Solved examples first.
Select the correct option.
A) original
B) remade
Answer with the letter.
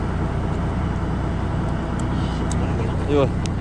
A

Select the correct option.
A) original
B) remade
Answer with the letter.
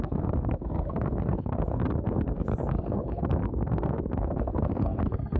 B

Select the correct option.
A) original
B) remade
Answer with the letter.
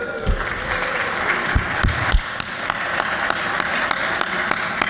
A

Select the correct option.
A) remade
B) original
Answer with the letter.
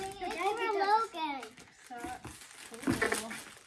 B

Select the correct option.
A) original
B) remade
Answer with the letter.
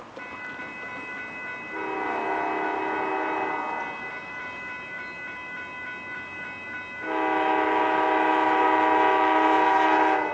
A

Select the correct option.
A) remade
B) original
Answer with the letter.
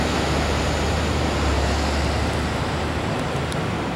B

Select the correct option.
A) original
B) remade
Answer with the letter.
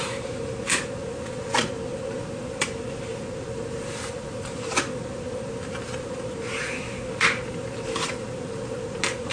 A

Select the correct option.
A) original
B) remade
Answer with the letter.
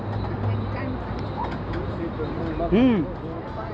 A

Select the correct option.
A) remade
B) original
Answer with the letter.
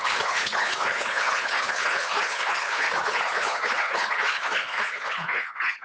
A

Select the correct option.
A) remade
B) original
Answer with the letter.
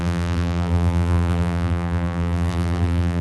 A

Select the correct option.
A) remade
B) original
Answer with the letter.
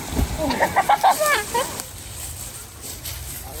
A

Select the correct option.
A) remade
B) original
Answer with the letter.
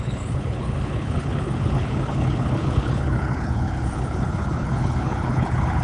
A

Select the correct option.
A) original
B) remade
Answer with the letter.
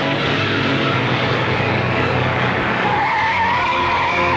B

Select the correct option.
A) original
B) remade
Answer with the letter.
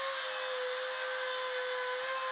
A